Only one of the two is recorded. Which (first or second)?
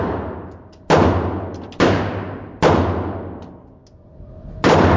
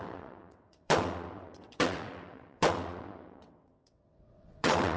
first